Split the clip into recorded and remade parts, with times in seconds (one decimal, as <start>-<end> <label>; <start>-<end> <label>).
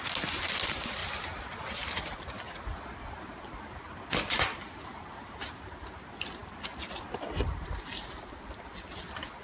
0.0-1.0 recorded; 1.0-5.6 remade; 5.6-6.4 recorded; 6.4-7.7 remade; 7.7-8.4 recorded; 8.4-9.0 remade; 9.0-9.4 recorded